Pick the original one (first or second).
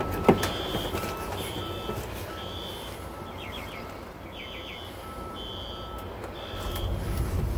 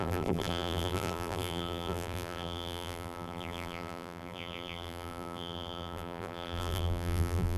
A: first